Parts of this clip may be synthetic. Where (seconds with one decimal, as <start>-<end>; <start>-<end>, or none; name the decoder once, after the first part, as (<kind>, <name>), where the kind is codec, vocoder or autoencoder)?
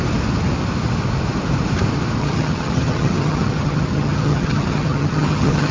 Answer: 2.2-5.7 (vocoder, HiFi-GAN)